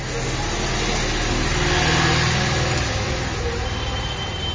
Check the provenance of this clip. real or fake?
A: real